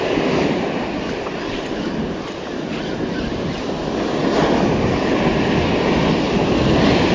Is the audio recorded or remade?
recorded